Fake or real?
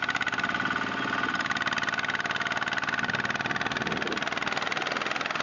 real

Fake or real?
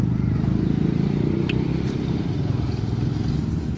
real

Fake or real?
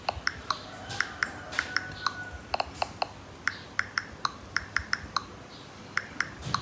real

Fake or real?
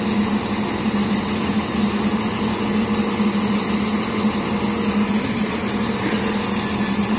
real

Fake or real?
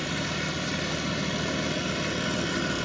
real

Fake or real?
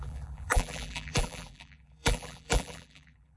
fake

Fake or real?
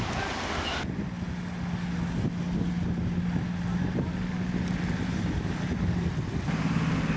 real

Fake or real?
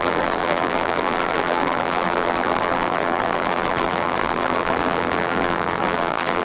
fake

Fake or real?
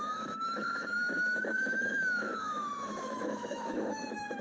fake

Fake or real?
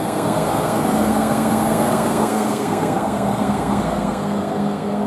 fake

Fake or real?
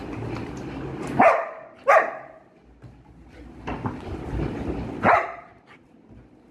real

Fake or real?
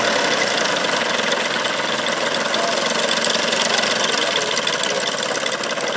real